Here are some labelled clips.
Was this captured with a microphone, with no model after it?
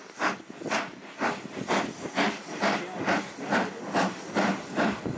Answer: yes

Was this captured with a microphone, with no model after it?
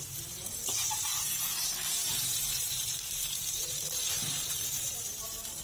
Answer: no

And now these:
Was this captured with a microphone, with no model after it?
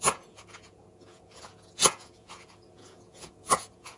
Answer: no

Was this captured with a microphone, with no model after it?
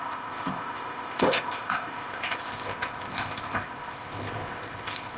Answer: no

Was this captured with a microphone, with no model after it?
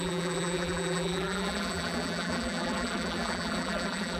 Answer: no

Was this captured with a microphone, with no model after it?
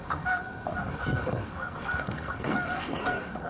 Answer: no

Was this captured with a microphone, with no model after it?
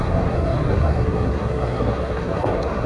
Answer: no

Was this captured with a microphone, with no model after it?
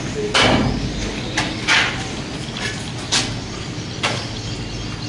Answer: yes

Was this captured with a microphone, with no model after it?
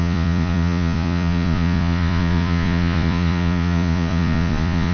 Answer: no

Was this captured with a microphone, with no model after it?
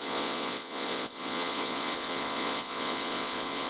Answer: no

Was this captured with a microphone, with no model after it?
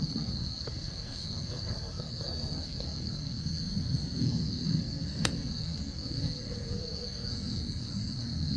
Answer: no